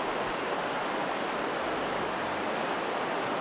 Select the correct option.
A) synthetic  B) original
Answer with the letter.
B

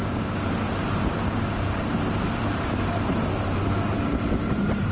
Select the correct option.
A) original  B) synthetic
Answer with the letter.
B